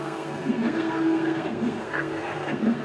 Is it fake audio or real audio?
fake